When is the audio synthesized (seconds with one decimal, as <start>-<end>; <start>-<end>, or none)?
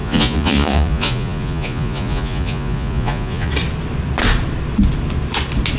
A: 0.0-3.5